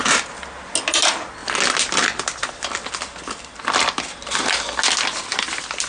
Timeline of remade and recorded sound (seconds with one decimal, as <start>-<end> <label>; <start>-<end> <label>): 0.0-5.9 recorded